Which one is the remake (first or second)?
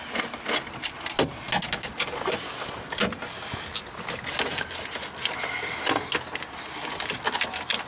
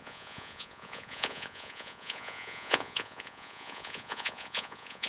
second